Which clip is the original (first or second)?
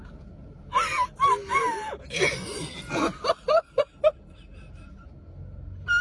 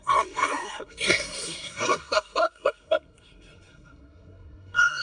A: first